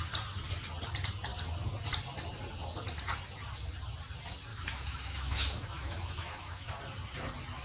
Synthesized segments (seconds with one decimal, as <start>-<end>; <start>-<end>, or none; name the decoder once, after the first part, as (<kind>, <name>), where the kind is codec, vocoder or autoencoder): 4.5-6.7 (autoencoder, DAC-VAE)